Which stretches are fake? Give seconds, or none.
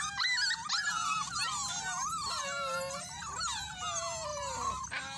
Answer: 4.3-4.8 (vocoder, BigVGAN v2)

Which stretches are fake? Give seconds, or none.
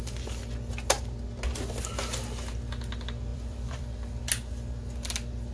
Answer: 3.3-4.1 (vocoder, BigVGAN v2)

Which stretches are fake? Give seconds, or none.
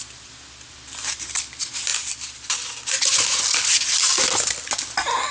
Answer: none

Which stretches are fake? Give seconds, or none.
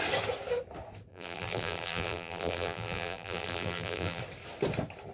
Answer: 1.1-4.2 (vocoder, BigVGAN v2)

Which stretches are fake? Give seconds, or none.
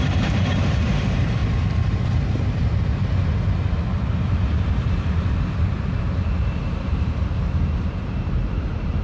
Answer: 0.0-1.4 (vocoder, BigVGAN v2); 6.4-9.0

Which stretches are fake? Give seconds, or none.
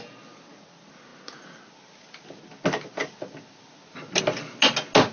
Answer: none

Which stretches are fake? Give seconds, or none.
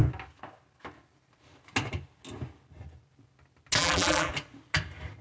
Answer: 3.8-4.3 (vocoder, BigVGAN v2)